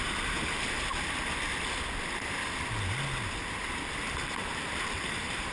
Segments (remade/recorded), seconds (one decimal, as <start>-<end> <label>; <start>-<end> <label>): 0.0-0.9 remade; 0.9-4.2 recorded; 4.2-5.5 remade